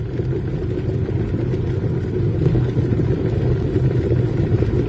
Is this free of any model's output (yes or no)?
yes